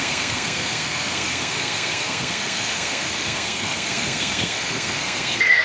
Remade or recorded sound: remade